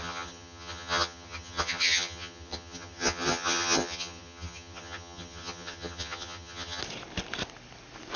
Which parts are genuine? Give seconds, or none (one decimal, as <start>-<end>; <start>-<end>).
6.8-8.2